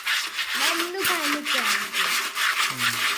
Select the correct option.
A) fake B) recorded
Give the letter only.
B